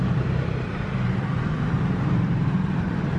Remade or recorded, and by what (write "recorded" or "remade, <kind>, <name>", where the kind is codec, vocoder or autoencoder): remade, vocoder, BigVGAN v2